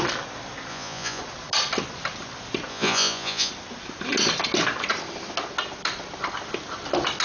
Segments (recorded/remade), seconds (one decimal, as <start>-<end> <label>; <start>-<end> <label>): 0.0-0.7 recorded; 0.7-1.2 remade; 1.2-2.7 recorded; 2.7-3.5 remade; 3.5-7.2 recorded